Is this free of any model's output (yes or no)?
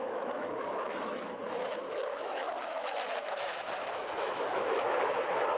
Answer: no